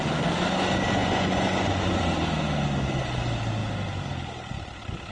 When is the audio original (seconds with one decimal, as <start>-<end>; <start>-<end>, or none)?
0.0-1.0; 2.0-5.1